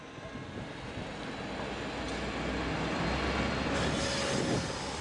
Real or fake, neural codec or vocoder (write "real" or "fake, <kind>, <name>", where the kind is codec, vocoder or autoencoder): real